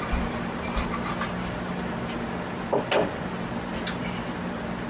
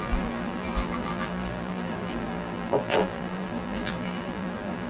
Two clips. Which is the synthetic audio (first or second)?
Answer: second